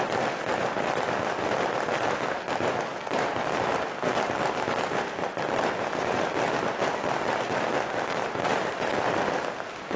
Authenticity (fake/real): real